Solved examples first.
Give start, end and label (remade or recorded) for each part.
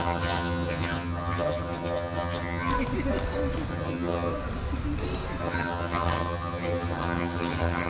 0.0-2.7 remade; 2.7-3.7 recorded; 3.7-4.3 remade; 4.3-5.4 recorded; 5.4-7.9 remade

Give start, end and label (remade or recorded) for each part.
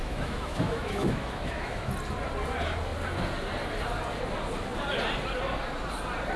0.0-1.9 remade; 1.9-6.4 recorded